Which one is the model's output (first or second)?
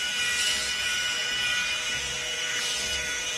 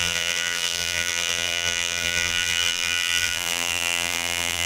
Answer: second